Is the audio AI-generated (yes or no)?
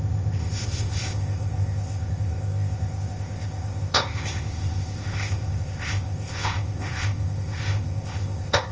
yes